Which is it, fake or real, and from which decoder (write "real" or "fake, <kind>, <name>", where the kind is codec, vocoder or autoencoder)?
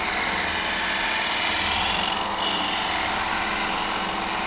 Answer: real